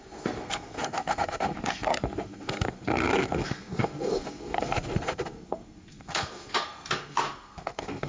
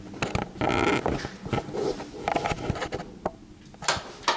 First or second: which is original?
second